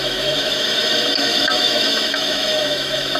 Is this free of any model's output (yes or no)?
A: no